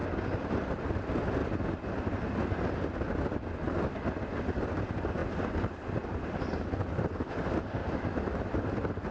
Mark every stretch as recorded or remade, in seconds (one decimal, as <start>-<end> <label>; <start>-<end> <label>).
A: 0.0-9.1 recorded